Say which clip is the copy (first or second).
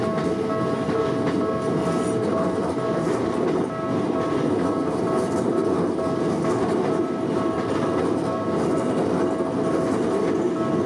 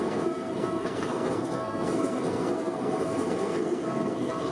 second